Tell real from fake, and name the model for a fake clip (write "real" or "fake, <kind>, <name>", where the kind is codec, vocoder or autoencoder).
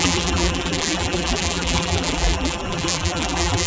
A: fake, vocoder, BigVGAN v2